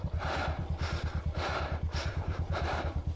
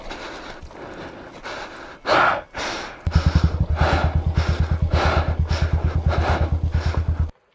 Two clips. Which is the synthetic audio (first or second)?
first